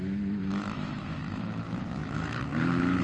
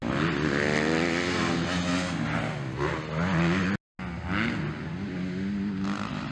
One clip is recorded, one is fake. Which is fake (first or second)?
first